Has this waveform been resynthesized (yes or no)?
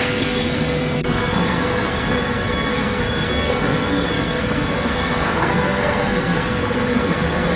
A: yes